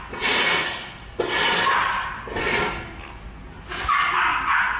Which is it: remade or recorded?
recorded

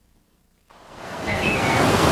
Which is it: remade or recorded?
remade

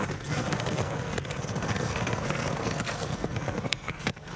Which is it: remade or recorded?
remade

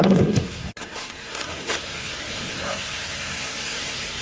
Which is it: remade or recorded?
remade